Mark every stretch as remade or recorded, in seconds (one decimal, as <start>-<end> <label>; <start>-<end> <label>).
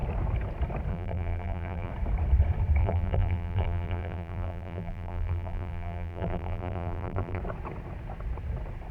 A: 0.0-0.9 recorded; 0.9-1.9 remade; 1.9-2.8 recorded; 2.8-7.4 remade; 7.4-8.9 recorded